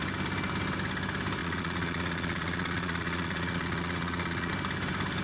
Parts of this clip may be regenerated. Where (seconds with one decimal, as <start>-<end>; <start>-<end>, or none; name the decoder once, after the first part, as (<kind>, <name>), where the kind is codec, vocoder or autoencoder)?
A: 1.4-4.5 (vocoder, Vocos)